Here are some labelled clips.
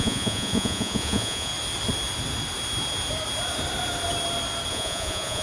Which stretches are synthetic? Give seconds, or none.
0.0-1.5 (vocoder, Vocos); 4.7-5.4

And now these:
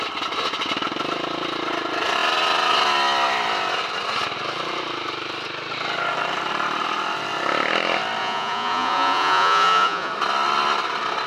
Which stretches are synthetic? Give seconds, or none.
8.2-10.1 (vocoder, Vocos)

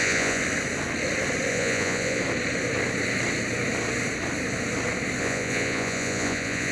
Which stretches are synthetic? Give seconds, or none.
0.0-0.4 (vocoder, Vocos); 1.5-2.2; 5.2-6.7